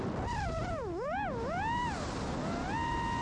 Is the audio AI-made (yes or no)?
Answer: no